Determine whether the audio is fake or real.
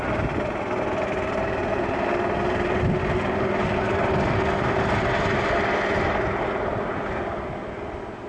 real